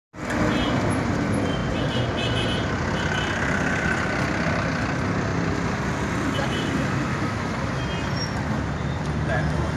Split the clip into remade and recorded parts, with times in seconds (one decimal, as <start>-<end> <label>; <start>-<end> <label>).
0.0-7.1 recorded; 7.1-7.8 remade; 7.8-9.8 recorded

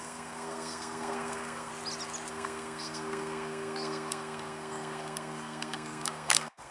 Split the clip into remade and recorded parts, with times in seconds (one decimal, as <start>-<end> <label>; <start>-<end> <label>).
0.0-1.7 remade; 1.7-2.3 recorded; 2.3-6.7 remade

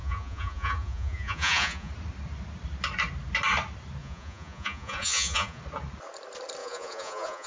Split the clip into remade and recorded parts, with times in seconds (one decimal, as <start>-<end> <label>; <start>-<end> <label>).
0.0-1.9 remade; 1.9-4.0 recorded; 4.0-5.6 remade; 5.6-6.6 recorded; 6.6-7.5 remade

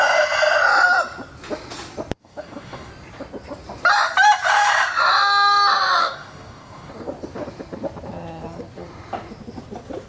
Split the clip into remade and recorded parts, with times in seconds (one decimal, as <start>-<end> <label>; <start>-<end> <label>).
0.0-2.2 recorded; 2.2-2.9 remade; 2.9-6.0 recorded; 6.0-6.9 remade; 6.9-10.1 recorded

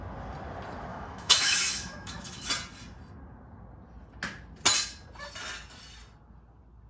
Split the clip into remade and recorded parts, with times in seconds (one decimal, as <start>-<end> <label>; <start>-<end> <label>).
0.0-0.9 recorded; 0.9-2.5 remade; 2.5-6.9 recorded

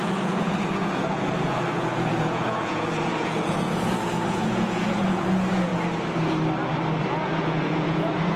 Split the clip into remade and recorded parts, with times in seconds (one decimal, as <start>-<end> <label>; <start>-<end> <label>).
0.0-5.7 remade; 5.7-7.0 recorded; 7.0-8.4 remade

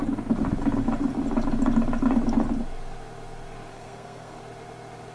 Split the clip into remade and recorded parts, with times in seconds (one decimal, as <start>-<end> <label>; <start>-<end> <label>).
0.0-3.7 recorded; 3.7-4.4 remade; 4.4-5.1 recorded

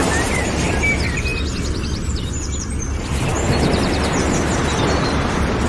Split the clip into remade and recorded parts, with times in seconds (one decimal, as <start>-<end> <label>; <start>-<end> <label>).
0.0-5.7 recorded